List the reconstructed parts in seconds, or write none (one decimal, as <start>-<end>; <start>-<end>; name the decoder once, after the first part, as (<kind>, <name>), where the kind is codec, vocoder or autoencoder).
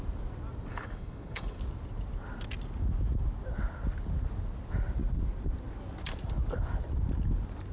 0.7-1.6 (codec, HILCodec)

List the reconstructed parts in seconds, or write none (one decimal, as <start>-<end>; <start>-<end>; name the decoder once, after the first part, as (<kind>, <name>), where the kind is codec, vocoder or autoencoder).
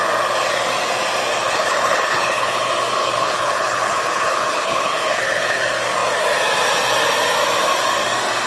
1.3-2.6 (codec, HILCodec); 3.0-5.6